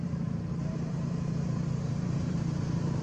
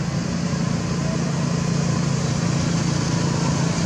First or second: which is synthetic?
first